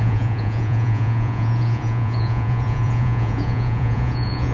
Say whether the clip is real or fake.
fake